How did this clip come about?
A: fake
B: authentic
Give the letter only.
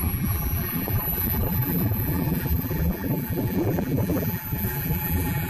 A